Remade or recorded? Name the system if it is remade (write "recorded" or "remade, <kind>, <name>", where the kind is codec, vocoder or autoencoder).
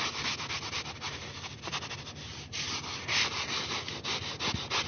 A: recorded